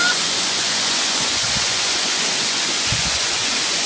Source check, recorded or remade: remade